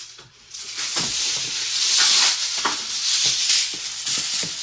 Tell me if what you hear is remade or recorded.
recorded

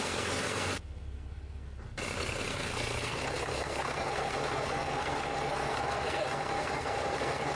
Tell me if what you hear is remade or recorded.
remade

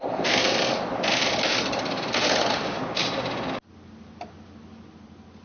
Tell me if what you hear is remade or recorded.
recorded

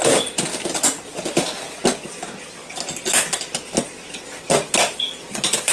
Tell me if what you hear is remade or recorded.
recorded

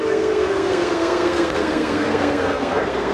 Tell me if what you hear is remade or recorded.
remade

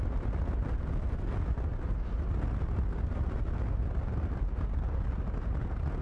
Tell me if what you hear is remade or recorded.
recorded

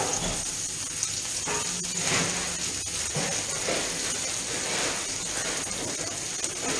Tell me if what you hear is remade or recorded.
recorded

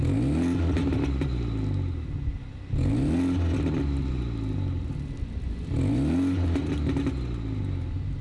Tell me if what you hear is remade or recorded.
recorded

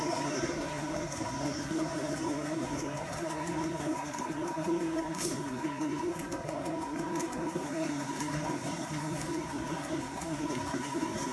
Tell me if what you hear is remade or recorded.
remade